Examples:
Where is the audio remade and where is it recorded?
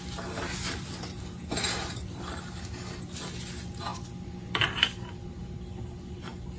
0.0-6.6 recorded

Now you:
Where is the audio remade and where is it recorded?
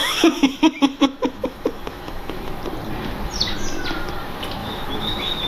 0.0-2.6 remade; 2.6-4.6 recorded; 4.6-5.5 remade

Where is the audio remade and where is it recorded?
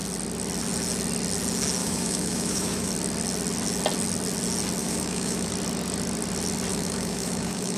0.0-1.8 recorded; 1.8-2.9 remade; 2.9-4.8 recorded; 4.8-5.5 remade; 5.5-6.7 recorded; 6.7-7.8 remade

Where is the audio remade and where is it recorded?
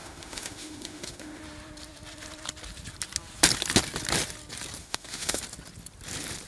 0.0-1.4 remade; 1.4-4.8 recorded; 4.8-5.4 remade; 5.4-6.5 recorded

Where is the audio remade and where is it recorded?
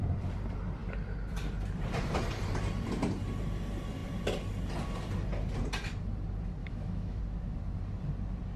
0.0-6.6 recorded; 6.6-7.2 remade; 7.2-8.6 recorded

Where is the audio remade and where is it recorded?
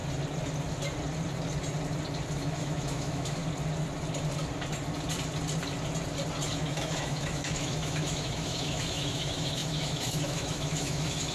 0.0-2.3 recorded; 2.3-3.4 remade; 3.4-6.5 recorded; 6.5-11.3 remade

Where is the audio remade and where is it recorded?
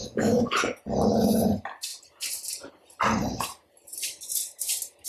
0.0-0.6 remade; 0.6-5.1 recorded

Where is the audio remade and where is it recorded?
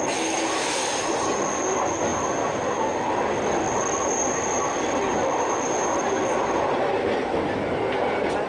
0.0-8.5 recorded